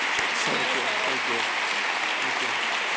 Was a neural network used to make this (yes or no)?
no